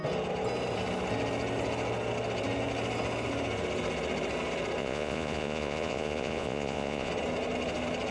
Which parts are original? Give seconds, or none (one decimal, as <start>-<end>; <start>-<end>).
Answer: 0.0-4.8; 7.1-8.1